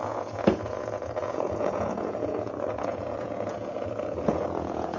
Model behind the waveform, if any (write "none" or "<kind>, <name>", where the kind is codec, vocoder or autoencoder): vocoder, Vocos